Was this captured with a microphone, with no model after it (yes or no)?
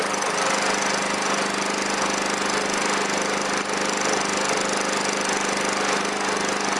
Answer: yes